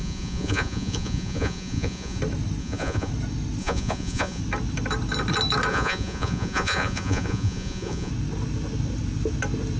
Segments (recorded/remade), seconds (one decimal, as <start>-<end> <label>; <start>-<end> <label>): 0.0-2.2 remade; 2.2-2.6 recorded; 2.6-3.1 remade; 3.1-3.6 recorded; 3.6-4.4 remade; 4.4-5.7 recorded; 5.7-8.1 remade; 8.1-9.8 recorded